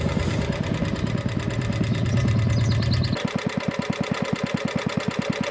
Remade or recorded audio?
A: recorded